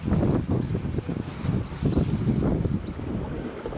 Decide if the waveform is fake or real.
real